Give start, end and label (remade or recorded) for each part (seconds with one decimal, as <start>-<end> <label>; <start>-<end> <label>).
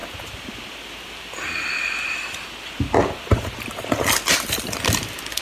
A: 0.0-5.4 recorded